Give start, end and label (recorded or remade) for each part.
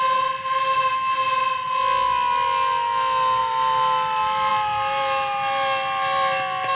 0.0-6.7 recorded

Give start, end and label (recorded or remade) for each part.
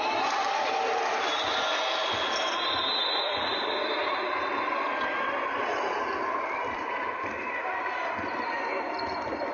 0.0-9.5 recorded